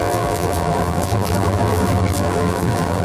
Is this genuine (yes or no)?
no